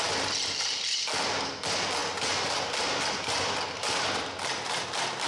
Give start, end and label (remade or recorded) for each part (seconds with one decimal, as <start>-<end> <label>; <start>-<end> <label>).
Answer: 0.0-5.3 recorded